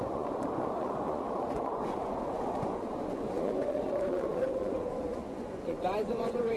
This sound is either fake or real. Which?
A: fake